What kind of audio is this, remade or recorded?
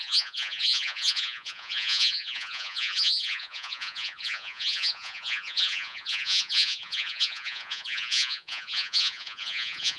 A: remade